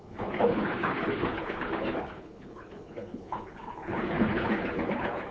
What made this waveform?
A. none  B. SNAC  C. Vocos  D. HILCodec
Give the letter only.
D